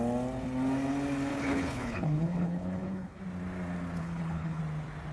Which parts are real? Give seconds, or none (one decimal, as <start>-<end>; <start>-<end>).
0.0-1.3; 3.2-4.0; 4.6-5.1